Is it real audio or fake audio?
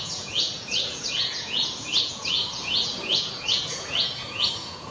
fake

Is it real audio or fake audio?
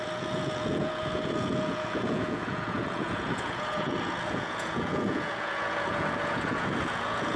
fake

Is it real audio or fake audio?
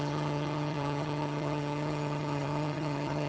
fake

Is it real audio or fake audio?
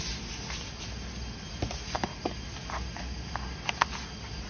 real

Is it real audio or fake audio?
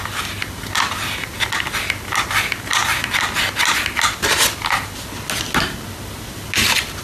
real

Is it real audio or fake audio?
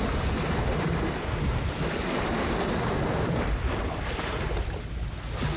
real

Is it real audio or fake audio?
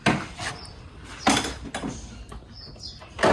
real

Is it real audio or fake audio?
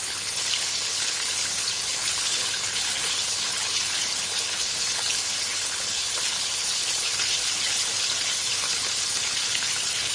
fake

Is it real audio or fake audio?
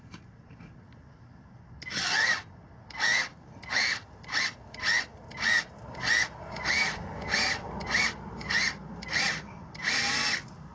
real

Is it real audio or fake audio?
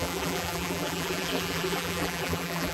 fake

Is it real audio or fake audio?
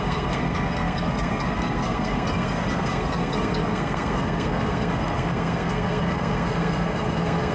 fake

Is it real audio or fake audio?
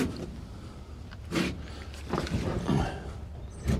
real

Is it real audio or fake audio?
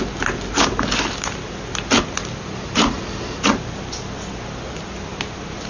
real